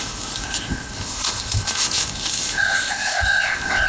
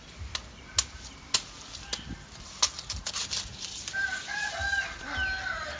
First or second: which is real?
second